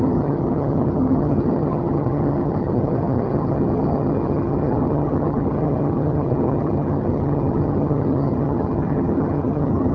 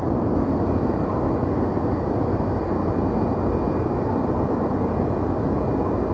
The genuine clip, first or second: second